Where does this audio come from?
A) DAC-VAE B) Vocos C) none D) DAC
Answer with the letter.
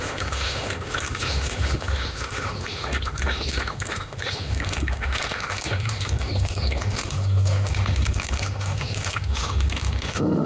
A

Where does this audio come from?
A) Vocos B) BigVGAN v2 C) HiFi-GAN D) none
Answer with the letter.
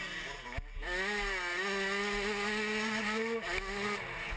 D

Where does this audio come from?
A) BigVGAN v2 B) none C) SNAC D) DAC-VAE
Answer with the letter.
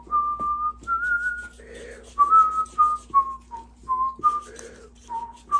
B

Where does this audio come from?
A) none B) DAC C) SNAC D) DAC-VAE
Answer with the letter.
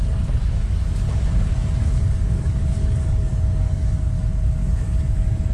B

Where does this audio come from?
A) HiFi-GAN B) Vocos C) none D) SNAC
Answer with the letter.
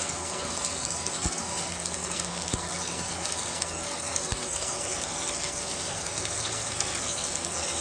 D